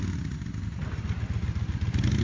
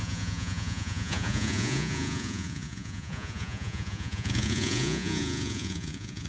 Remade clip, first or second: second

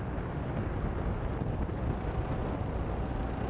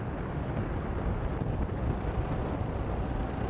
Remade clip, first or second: second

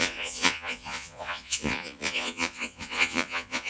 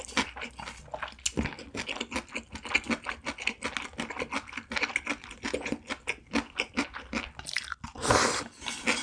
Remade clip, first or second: first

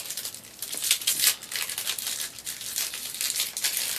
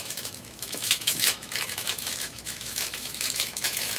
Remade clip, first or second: second